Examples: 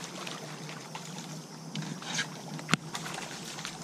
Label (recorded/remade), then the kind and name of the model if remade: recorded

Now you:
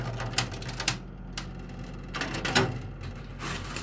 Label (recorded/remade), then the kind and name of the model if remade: recorded